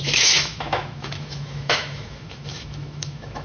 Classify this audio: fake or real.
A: fake